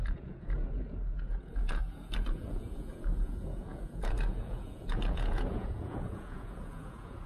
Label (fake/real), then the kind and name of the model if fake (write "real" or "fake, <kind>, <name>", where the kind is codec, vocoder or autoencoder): fake, vocoder, Vocos